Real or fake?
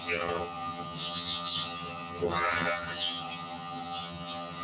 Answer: fake